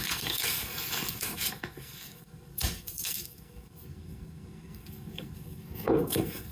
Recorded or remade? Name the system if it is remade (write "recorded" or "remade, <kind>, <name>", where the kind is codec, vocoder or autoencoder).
remade, codec, SNAC